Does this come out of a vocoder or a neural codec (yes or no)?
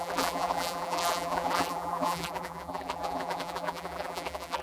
yes